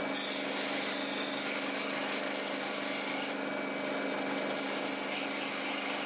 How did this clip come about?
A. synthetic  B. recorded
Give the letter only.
B